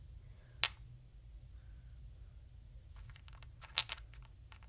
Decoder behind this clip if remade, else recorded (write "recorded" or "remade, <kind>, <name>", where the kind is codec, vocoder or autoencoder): recorded